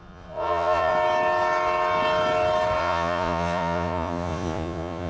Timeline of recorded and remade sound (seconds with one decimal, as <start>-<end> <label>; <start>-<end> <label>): 0.0-0.9 remade; 0.9-2.8 recorded; 2.8-5.1 remade